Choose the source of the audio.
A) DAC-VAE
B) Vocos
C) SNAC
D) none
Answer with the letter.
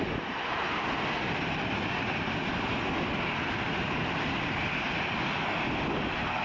D